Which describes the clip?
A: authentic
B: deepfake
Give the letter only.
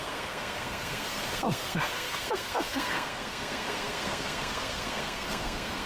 B